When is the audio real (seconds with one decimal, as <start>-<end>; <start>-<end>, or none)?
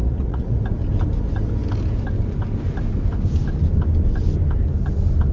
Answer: 0.6-5.3